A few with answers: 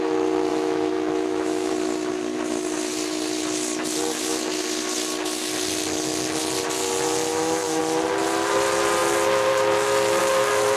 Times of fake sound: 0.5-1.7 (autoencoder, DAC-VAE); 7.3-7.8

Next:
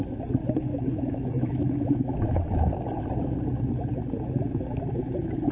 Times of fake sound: 0.7-2.7 (autoencoder, DAC-VAE)